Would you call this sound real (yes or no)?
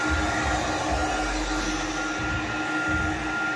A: yes